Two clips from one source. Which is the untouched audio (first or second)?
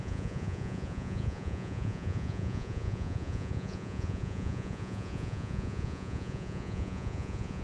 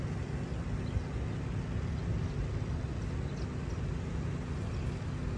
second